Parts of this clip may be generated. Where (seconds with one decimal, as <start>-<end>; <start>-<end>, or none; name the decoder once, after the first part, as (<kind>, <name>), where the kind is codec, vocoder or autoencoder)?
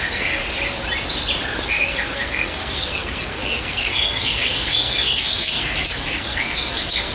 0.0-0.4 (codec, SNAC); 1.7-7.1